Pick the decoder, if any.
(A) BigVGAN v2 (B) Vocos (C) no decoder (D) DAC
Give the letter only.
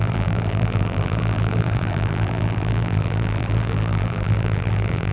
A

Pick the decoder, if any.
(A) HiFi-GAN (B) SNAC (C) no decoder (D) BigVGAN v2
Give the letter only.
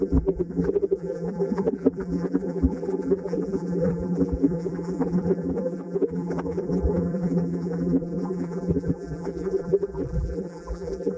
D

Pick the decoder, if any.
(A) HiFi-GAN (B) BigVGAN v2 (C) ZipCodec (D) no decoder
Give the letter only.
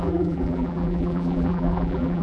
B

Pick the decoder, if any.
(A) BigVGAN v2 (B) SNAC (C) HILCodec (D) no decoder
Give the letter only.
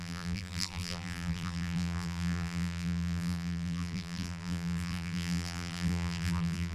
A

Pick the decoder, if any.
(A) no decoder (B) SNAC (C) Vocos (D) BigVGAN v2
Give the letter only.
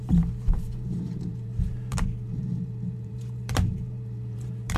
D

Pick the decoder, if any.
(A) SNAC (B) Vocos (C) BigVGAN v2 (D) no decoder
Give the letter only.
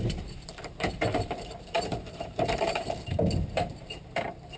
C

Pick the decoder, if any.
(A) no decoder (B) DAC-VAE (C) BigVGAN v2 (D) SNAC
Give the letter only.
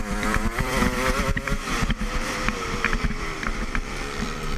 C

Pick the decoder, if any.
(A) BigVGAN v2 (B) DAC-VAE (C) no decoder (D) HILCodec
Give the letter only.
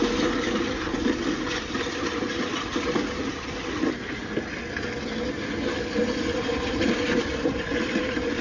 C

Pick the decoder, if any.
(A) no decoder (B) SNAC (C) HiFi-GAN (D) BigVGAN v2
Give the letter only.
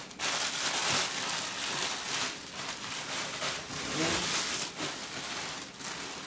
A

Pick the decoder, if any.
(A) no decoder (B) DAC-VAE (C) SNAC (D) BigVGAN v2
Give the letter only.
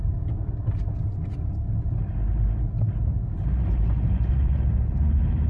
A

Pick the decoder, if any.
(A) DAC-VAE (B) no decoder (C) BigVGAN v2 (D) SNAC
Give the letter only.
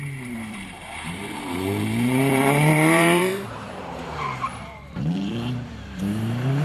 C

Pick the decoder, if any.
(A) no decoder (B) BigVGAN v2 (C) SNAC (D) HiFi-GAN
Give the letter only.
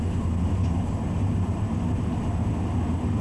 A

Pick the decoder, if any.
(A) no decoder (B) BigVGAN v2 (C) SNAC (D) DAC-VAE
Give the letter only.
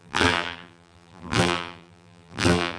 B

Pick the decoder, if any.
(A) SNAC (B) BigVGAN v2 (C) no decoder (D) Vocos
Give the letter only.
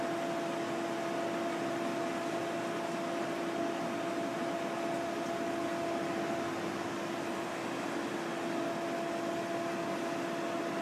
C